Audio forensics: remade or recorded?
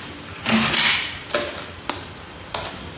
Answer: recorded